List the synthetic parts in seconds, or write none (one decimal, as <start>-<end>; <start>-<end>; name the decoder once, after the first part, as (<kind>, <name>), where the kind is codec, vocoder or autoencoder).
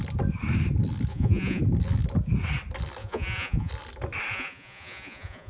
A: 1.1-1.6 (vocoder, Vocos); 3.0-3.7; 4.3-5.5